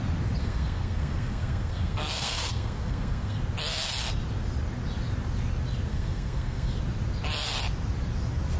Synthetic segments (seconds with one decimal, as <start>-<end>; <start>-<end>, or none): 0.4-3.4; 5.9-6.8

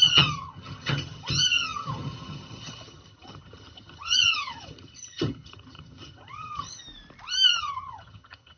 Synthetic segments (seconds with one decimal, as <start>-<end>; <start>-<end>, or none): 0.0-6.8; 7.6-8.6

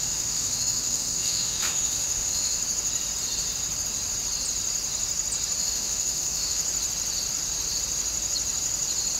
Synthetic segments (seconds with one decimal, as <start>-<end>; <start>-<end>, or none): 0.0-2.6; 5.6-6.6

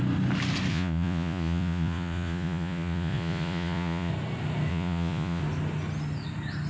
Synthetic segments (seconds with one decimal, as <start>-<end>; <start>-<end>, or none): 0.7-4.1; 4.7-5.4

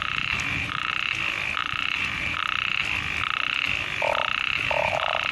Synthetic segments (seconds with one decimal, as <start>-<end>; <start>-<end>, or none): 0.0-0.9; 1.6-2.4; 4.8-5.3

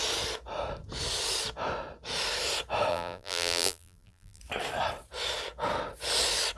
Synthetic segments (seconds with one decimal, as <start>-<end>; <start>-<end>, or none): 2.9-4.4